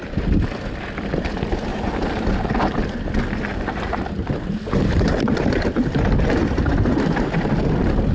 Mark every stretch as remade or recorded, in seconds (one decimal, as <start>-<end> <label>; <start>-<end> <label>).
0.0-1.7 recorded; 1.7-2.5 remade; 2.5-3.5 recorded; 3.5-7.6 remade; 7.6-8.1 recorded